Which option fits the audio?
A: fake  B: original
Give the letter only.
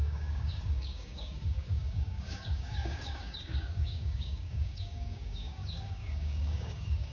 A